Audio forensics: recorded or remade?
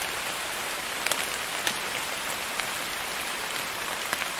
recorded